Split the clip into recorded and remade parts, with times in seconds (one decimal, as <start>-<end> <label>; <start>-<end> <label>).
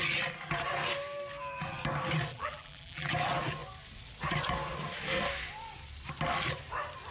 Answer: 0.0-2.3 recorded; 2.3-3.1 remade; 3.1-7.1 recorded